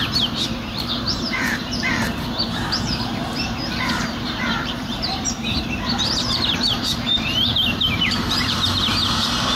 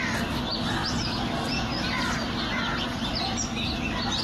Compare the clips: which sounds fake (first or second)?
first